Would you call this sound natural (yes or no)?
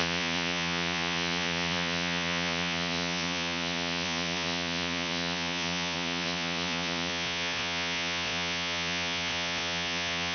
no